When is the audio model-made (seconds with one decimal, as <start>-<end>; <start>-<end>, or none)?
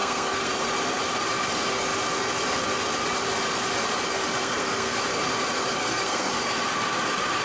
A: 0.0-0.5; 4.4-5.0; 5.8-6.3